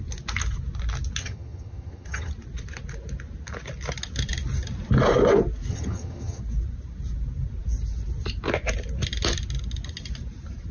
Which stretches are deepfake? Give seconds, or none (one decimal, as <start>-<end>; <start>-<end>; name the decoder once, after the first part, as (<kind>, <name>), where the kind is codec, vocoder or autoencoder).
1.2-2.3 (vocoder, HiFi-GAN); 5.7-6.4